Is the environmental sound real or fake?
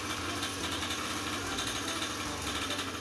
real